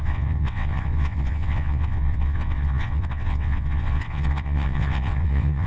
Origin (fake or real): fake